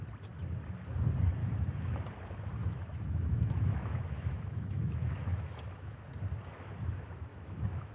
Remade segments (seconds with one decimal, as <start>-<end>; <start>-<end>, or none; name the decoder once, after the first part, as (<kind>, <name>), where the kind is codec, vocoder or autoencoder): 1.4-2.0 (autoencoder, DAC-VAE); 2.6-6.0; 7.3-7.9